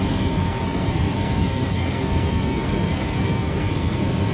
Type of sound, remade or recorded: remade